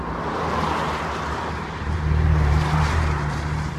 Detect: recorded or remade remade